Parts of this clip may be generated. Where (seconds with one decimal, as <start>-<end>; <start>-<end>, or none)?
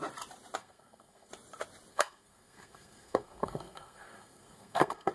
0.6-1.3; 1.9-5.1